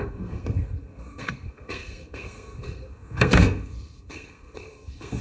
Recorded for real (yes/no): no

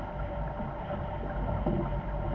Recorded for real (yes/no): yes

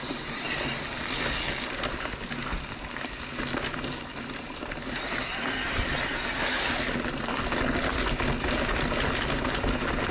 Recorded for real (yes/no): yes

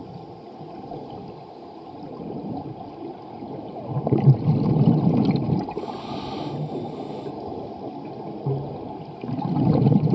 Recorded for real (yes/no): yes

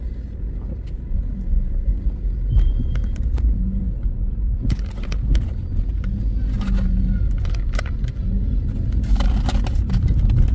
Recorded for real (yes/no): yes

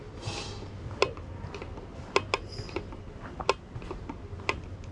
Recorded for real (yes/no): yes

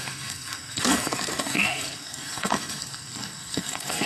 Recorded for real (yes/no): no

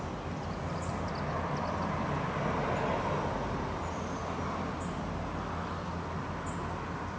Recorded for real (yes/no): yes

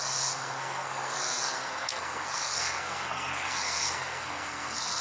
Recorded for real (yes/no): no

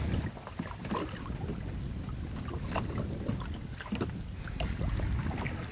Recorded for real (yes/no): yes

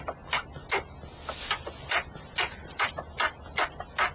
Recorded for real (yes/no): yes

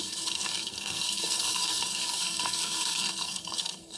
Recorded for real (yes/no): no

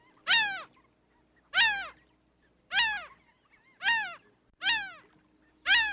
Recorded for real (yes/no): yes